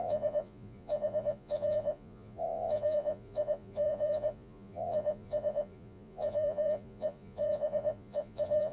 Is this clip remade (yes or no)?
yes